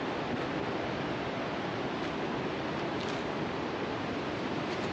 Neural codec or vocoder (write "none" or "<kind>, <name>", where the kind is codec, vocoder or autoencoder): none